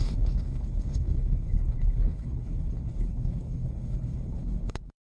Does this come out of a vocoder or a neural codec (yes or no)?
yes